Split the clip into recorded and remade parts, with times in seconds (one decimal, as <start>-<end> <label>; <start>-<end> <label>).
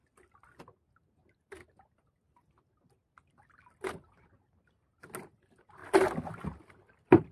0.0-7.3 recorded